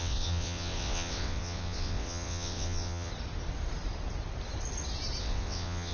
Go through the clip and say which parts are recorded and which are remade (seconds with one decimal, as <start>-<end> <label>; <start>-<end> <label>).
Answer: 0.0-3.1 remade; 3.1-5.2 recorded; 5.2-5.9 remade